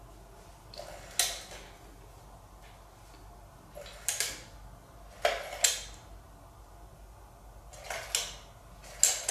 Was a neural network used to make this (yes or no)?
no